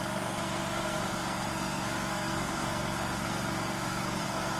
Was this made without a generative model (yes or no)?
no